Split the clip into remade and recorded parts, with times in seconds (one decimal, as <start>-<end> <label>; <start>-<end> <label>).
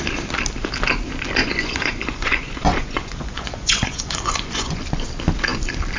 0.0-1.4 recorded; 1.4-4.8 remade; 4.8-6.0 recorded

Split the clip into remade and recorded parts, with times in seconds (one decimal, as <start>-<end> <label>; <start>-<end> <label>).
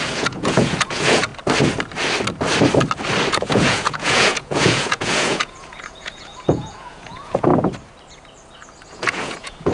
0.0-1.3 remade; 1.3-3.3 recorded; 3.3-7.5 remade; 7.5-8.9 recorded; 8.9-9.7 remade